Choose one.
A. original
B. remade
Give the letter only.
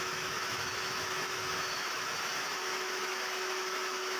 B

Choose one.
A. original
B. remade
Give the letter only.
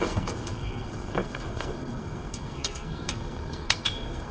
B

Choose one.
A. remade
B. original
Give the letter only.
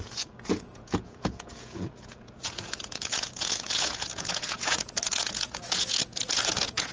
A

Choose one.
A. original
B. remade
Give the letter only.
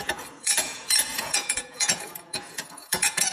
B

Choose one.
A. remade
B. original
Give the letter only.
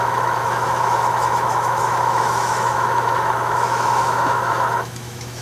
A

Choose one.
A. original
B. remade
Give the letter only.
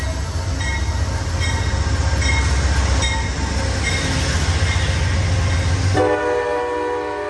A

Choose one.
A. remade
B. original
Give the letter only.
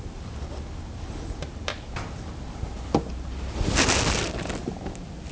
B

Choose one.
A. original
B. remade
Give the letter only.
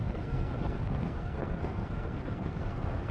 B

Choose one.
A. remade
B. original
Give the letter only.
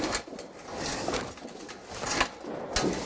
B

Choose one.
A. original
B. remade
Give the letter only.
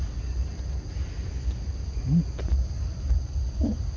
A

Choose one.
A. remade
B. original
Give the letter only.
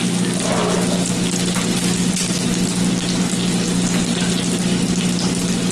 B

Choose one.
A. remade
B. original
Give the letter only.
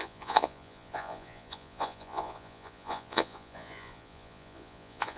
A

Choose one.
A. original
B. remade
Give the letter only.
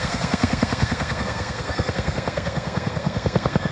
B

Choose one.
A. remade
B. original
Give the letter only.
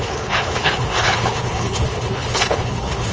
A